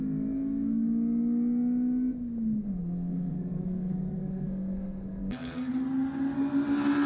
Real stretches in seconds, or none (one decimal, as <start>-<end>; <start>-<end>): 0.0-2.8; 5.7-7.1